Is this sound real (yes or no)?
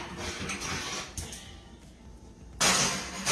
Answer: yes